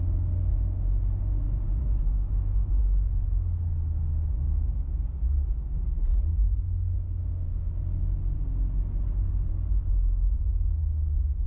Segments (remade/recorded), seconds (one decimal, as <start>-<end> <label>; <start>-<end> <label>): 0.0-0.5 recorded; 0.5-1.4 remade; 1.4-2.1 recorded; 2.1-2.8 remade; 2.8-7.2 recorded; 7.2-7.7 remade; 7.7-11.5 recorded